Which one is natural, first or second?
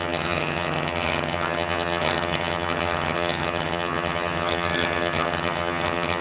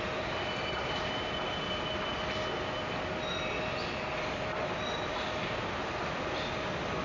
second